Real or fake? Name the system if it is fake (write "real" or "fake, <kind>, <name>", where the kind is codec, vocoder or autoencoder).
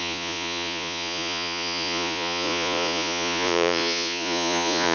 fake, vocoder, Vocos